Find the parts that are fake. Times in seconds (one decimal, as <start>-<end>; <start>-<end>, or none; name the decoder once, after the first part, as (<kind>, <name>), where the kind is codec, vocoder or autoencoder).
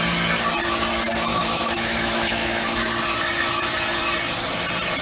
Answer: 1.3-2.9 (autoencoder, DAC-VAE)